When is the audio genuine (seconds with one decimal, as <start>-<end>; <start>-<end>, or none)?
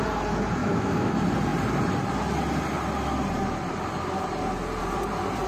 0.0-0.6; 1.1-5.5